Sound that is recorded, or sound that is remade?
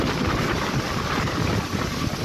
recorded